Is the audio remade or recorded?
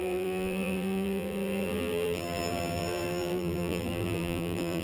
remade